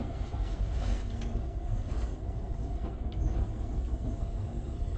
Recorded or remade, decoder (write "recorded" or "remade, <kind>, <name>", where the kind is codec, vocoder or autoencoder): remade, codec, SNAC